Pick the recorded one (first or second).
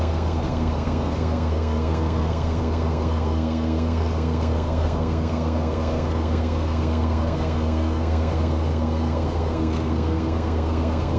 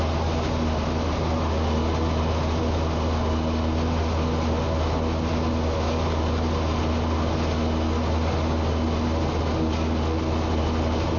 second